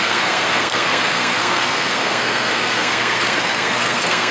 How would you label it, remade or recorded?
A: remade